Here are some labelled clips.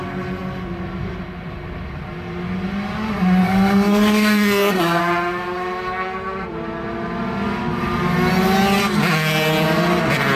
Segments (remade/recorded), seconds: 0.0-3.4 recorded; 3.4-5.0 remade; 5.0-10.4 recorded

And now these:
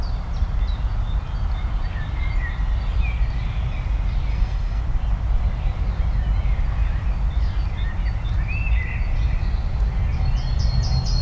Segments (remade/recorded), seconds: 0.0-4.3 recorded; 4.3-4.8 remade; 4.8-11.2 recorded

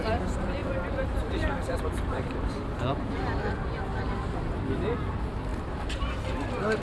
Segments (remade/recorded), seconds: 0.0-0.6 recorded; 0.6-3.1 remade; 3.1-5.5 recorded; 5.5-6.1 remade; 6.1-6.8 recorded

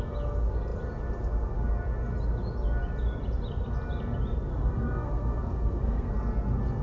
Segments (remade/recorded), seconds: 0.0-4.5 recorded; 4.5-6.1 remade; 6.1-6.8 recorded

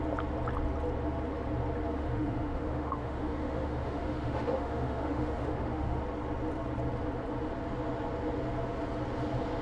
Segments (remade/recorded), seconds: 0.0-2.0 recorded; 2.0-6.0 remade; 6.0-9.6 recorded

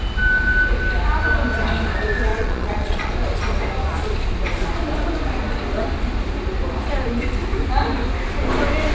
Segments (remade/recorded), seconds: 0.0-2.3 recorded; 2.3-3.1 remade; 3.1-8.9 recorded

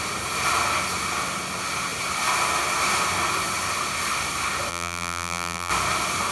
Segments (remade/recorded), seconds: 0.0-4.7 recorded; 4.7-5.7 remade; 5.7-6.3 recorded